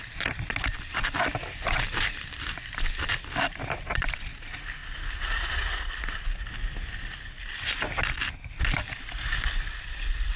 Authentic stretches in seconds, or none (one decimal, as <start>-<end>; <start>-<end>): 0.0-10.4